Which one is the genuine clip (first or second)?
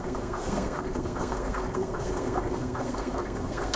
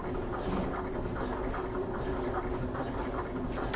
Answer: second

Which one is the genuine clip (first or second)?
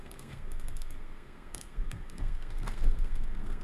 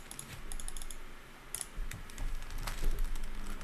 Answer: second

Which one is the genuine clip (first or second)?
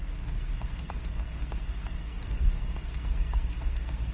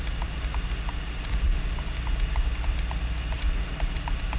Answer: second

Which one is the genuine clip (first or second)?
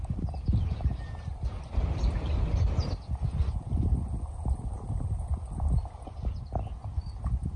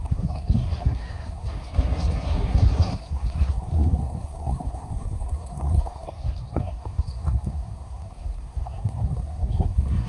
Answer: first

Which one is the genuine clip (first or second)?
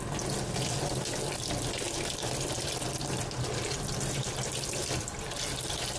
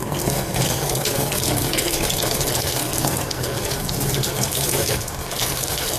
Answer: first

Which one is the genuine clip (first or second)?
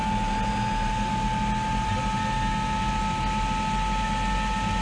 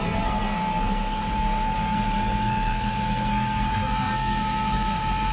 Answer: first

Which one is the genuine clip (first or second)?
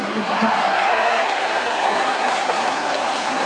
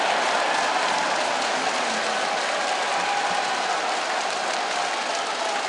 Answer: second